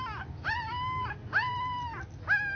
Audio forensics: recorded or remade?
recorded